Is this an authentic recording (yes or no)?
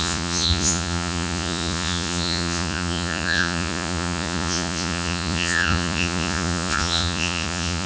no